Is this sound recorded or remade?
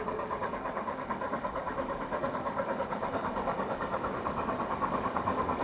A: remade